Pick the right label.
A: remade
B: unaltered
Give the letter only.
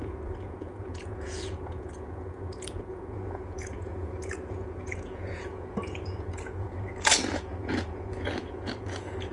A